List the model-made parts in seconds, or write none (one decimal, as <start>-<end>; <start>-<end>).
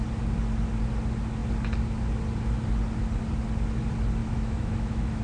4.2-5.2